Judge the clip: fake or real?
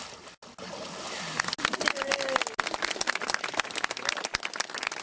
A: real